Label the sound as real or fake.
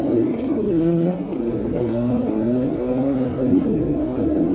fake